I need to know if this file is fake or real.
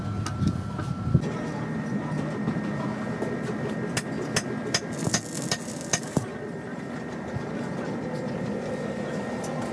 real